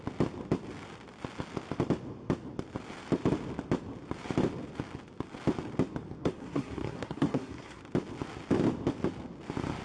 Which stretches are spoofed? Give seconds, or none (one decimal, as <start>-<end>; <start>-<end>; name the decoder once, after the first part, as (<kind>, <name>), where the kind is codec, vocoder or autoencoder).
6.2-7.8 (codec, SNAC)